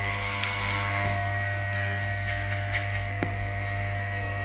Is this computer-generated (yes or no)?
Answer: yes